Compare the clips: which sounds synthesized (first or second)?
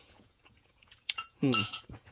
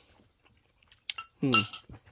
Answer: first